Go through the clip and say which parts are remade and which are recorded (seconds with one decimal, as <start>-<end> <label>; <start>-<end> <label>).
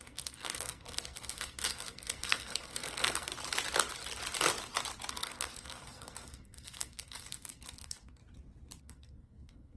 0.0-3.3 remade; 3.3-5.1 recorded; 5.1-8.2 remade; 8.2-8.8 recorded; 8.8-9.8 remade